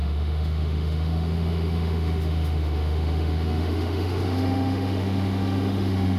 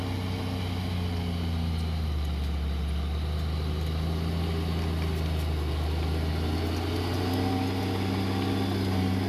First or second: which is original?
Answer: second